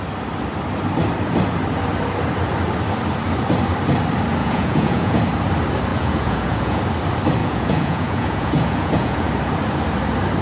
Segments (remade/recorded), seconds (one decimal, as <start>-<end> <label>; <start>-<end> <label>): 0.0-4.4 recorded; 4.4-5.2 remade; 5.2-5.9 recorded; 5.9-6.8 remade; 6.8-7.4 recorded; 7.4-9.3 remade; 9.3-10.4 recorded